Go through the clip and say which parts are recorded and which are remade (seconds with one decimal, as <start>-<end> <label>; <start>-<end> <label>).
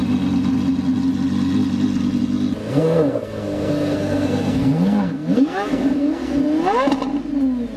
0.0-2.6 recorded; 2.6-6.4 remade; 6.4-7.8 recorded